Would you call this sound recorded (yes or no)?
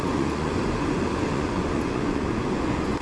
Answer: no